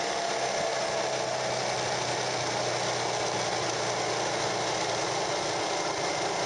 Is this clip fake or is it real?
real